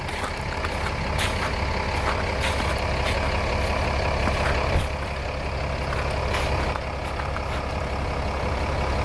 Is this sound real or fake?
real